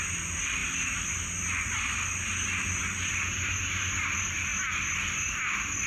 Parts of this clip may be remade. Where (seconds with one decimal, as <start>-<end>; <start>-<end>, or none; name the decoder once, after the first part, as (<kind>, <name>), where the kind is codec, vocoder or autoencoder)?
none